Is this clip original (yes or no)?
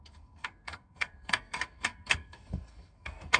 no